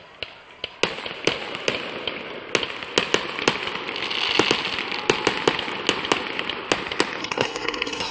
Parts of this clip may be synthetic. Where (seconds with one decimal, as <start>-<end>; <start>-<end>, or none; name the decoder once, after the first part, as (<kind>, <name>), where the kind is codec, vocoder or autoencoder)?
7.2-8.1 (codec, SNAC)